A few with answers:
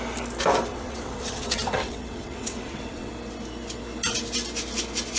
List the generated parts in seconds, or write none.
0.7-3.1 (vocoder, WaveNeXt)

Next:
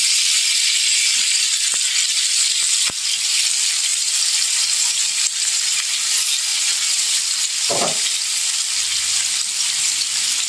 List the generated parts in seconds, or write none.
6.5-7.2 (vocoder, WaveNeXt)

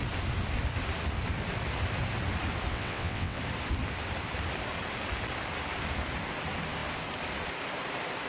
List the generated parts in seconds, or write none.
2.7-3.4 (vocoder, WaveNeXt)

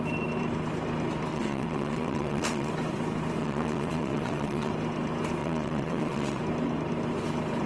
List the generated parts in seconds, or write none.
1.3-2.7 (vocoder, WaveNeXt); 3.4-4.7; 5.4-6.4

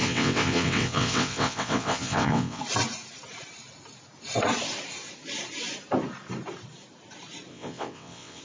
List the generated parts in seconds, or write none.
0.0-2.6 (vocoder, WaveNeXt); 7.5-8.4

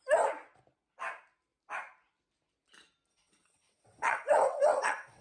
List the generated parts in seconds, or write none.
3.1-5.2 (vocoder, WaveNeXt)

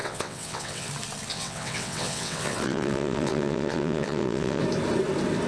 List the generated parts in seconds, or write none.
0.0-0.9 (vocoder, WaveNeXt); 1.3-4.6

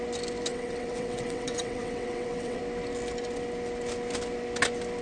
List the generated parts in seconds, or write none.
0.5-2.6 (vocoder, WaveNeXt)